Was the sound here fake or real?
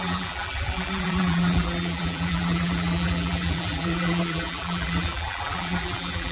fake